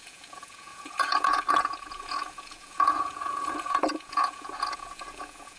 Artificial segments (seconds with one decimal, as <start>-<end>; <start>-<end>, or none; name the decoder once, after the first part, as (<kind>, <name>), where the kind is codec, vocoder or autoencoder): 0.0-5.6 (vocoder, Vocos)